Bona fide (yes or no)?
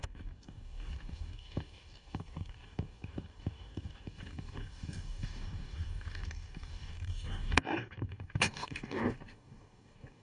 no